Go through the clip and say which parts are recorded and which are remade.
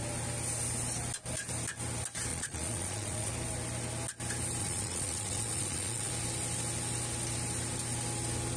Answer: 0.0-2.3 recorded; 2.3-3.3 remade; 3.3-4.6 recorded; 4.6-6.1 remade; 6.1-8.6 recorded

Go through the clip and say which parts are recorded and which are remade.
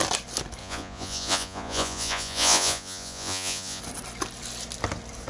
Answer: 0.0-0.6 recorded; 0.6-3.8 remade; 3.8-5.3 recorded